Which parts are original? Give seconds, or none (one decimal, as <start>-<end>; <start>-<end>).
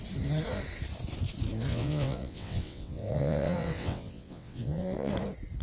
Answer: 0.0-1.7; 5.1-5.6